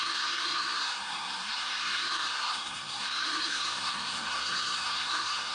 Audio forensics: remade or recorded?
remade